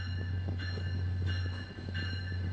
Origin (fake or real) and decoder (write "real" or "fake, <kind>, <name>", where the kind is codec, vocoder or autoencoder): fake, autoencoder, DAC-VAE